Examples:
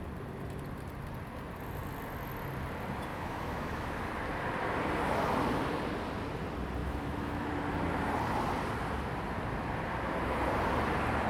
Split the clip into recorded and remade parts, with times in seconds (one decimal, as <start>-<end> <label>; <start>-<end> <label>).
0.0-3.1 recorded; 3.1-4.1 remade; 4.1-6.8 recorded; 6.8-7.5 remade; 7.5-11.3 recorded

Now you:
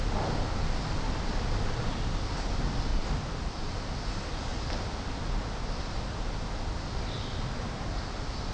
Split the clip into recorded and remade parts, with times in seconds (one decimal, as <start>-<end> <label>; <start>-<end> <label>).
0.0-2.9 recorded; 2.9-3.7 remade; 3.7-8.5 recorded

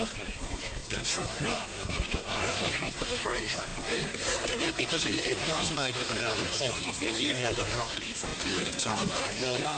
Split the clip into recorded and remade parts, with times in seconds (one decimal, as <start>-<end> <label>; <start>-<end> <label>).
0.0-9.8 remade

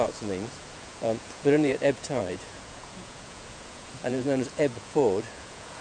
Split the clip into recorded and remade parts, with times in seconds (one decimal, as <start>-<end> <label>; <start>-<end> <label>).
0.0-5.8 remade

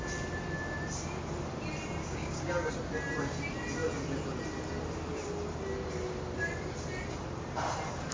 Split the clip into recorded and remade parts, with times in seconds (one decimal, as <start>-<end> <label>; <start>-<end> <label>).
0.0-2.0 recorded; 2.0-2.7 remade; 2.7-8.1 recorded

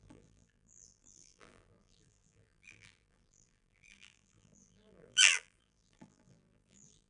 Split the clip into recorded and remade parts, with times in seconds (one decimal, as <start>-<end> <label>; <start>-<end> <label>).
0.0-7.1 remade

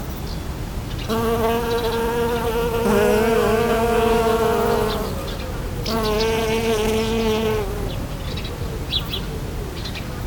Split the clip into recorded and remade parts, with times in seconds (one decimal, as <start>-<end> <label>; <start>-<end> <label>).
0.0-3.3 recorded; 3.3-4.3 remade; 4.3-10.3 recorded

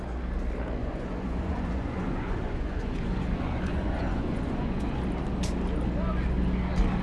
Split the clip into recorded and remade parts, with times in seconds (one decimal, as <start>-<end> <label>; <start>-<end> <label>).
0.0-0.8 recorded; 0.8-5.0 remade; 5.0-7.0 recorded